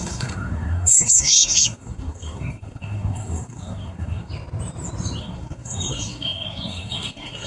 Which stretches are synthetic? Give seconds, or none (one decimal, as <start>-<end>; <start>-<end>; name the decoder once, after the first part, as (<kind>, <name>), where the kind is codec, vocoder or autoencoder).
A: 0.0-4.3 (codec, SNAC); 5.2-7.5